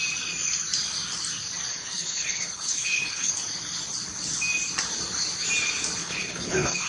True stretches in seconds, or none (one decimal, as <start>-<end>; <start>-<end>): 0.0-1.7; 3.3-6.0